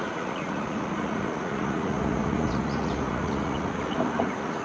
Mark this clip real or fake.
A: fake